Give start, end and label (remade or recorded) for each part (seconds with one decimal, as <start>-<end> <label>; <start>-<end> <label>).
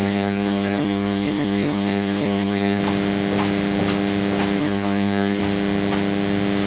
0.0-2.8 remade; 2.8-4.6 recorded; 4.6-5.4 remade; 5.4-6.7 recorded